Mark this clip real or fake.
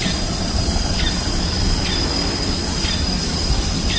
real